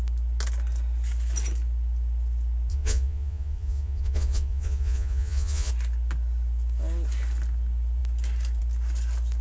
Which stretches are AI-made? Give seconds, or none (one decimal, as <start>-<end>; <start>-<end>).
2.7-5.7